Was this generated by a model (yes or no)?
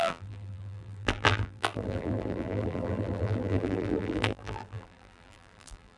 yes